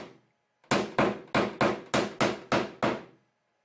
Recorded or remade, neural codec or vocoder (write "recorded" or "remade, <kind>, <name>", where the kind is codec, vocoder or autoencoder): recorded